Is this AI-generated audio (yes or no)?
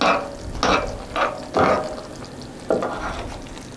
no